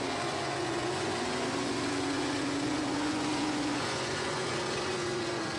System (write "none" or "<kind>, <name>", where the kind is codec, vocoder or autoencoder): vocoder, Vocos